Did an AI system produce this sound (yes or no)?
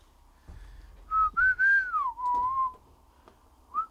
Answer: no